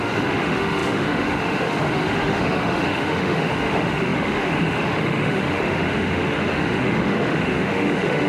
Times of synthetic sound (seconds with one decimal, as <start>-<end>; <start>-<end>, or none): 0.0-8.3